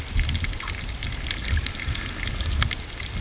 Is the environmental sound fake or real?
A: real